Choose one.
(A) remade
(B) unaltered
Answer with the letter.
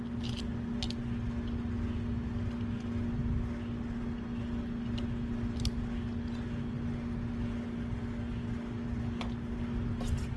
B